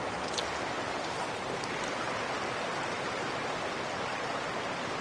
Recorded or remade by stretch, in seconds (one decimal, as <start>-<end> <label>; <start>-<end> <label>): 0.0-5.0 recorded